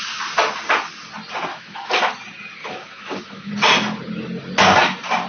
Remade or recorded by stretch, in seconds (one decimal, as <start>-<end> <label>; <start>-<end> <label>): 0.0-1.5 recorded; 1.5-2.1 remade; 2.1-2.6 recorded; 2.6-3.5 remade; 3.5-5.3 recorded